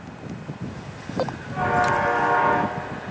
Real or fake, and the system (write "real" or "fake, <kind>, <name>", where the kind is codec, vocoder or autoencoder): real